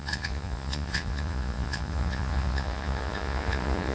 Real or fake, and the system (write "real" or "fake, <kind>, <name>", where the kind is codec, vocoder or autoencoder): fake, vocoder, Vocos